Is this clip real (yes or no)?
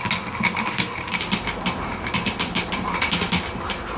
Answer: yes